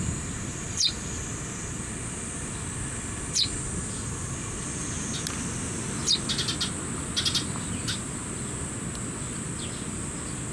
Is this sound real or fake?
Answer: real